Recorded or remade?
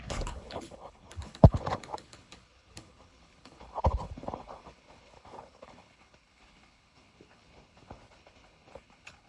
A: remade